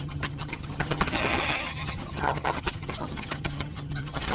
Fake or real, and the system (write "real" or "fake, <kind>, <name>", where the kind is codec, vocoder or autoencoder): fake, vocoder, HiFi-GAN